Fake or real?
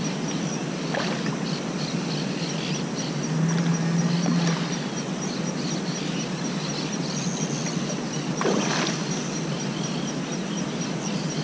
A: real